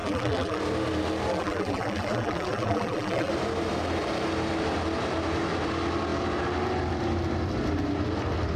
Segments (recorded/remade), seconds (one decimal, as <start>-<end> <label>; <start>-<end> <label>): 0.0-0.6 remade; 0.6-1.3 recorded; 1.3-3.3 remade; 3.3-8.6 recorded